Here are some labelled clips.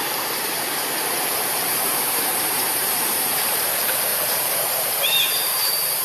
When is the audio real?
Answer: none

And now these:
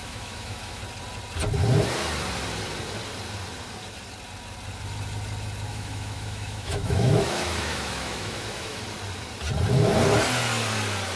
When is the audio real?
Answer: 0.8-5.7; 8.8-11.2

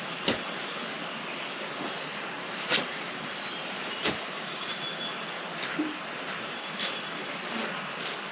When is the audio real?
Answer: 0.0-2.1; 4.7-8.3